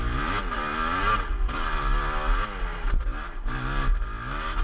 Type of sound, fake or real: real